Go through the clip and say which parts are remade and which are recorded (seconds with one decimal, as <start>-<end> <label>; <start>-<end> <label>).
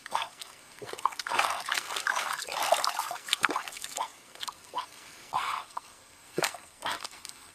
0.0-7.5 remade